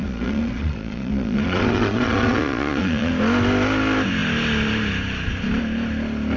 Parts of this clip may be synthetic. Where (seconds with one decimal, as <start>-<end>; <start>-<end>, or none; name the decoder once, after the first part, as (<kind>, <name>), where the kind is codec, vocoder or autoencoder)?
0.0-3.1 (vocoder, Vocos)